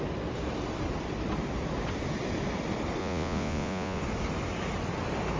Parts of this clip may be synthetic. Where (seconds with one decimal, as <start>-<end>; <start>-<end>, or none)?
3.0-4.0